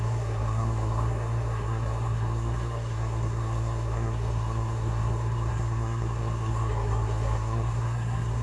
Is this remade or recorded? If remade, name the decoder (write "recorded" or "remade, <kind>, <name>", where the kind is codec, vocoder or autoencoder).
remade, codec, SNAC